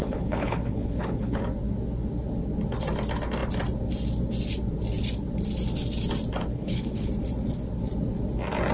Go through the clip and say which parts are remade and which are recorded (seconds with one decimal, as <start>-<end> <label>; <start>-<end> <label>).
0.0-1.4 remade; 1.4-6.5 recorded; 6.5-7.1 remade; 7.1-8.7 recorded